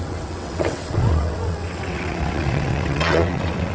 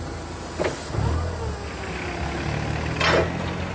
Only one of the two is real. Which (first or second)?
second